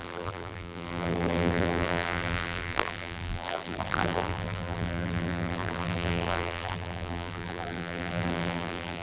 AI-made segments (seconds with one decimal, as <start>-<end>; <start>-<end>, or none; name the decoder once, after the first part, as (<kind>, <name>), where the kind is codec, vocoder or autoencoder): 0.0-9.0 (vocoder, BigVGAN v2)